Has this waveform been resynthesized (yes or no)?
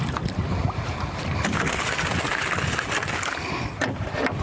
no